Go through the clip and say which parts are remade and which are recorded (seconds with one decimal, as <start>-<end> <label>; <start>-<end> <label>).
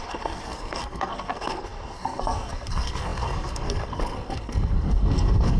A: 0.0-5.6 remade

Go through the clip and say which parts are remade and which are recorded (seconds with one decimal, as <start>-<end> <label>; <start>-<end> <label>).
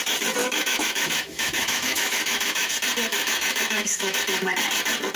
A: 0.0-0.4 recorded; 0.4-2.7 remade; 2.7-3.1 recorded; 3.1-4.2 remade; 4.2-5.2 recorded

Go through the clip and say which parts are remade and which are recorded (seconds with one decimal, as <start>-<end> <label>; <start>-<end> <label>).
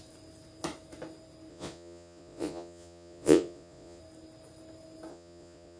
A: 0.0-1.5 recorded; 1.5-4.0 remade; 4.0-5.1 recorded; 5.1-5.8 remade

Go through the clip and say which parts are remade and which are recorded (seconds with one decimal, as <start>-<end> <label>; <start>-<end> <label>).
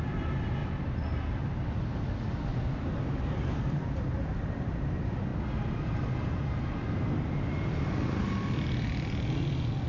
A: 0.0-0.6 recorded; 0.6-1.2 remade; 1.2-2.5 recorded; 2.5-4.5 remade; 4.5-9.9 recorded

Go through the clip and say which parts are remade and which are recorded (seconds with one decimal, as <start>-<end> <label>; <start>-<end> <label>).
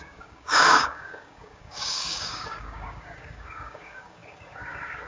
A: 0.0-5.1 remade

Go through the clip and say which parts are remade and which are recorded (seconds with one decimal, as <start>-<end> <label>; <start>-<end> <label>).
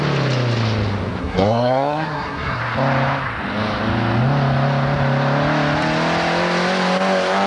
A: 0.0-1.2 recorded; 1.2-2.6 remade; 2.6-7.5 recorded